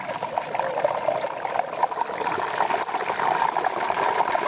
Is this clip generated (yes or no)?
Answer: no